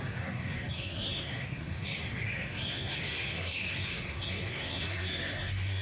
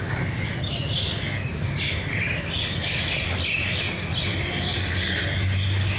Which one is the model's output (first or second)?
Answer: first